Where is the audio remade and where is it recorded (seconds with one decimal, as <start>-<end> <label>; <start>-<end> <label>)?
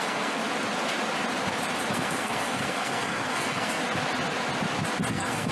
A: 0.0-0.4 remade; 0.4-1.9 recorded; 1.9-3.8 remade; 3.8-5.1 recorded; 5.1-5.5 remade